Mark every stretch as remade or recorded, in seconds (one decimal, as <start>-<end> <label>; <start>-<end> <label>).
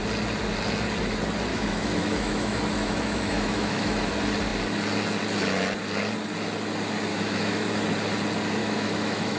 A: 0.0-1.5 recorded; 1.5-4.1 remade; 4.1-7.1 recorded; 7.1-7.7 remade; 7.7-8.6 recorded; 8.6-9.4 remade